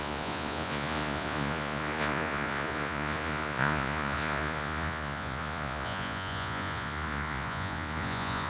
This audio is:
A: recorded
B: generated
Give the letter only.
B